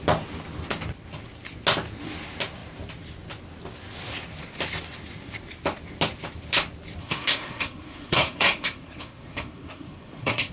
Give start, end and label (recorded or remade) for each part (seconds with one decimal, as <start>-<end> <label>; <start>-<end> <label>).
0.0-7.0 recorded; 7.0-10.5 remade